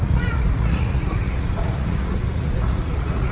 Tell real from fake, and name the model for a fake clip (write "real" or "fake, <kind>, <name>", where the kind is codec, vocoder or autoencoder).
fake, vocoder, Vocos